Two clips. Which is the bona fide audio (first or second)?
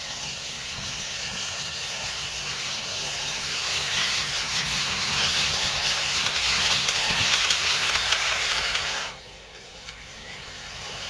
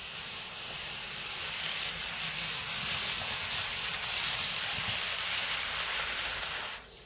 second